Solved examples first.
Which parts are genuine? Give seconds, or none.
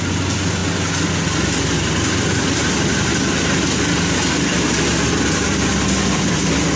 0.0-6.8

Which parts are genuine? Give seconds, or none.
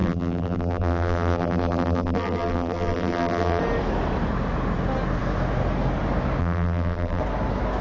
3.6-6.4; 7.2-7.8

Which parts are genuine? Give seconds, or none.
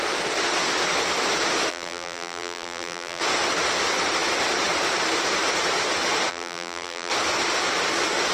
0.0-1.7; 3.2-6.3; 7.1-8.3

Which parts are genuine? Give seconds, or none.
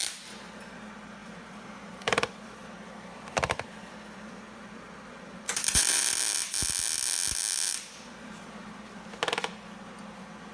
0.0-1.2; 6.1-10.5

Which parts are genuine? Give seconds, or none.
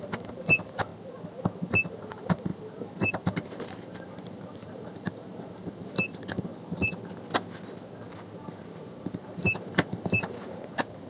0.9-1.9; 6.5-8.5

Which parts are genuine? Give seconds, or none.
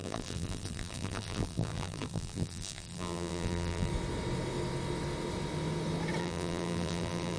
3.9-6.2